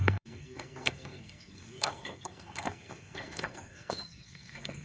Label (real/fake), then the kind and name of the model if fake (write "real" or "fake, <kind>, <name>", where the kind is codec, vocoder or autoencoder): fake, codec, SNAC